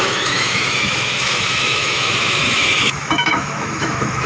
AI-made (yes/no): yes